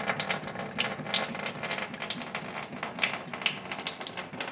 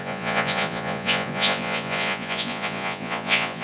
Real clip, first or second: first